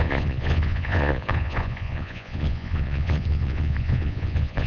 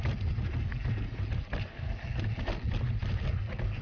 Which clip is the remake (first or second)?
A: first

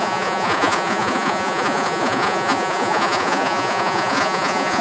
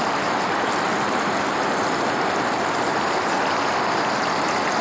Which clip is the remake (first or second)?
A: first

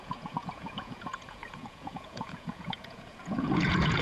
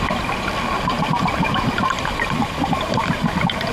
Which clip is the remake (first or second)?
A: first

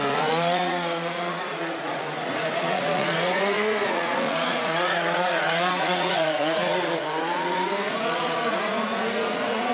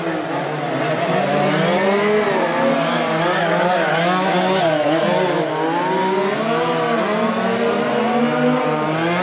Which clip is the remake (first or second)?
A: first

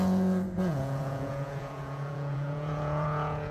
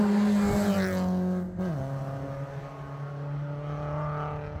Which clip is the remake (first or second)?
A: first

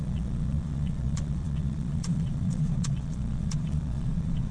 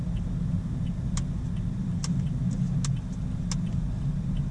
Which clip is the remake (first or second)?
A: first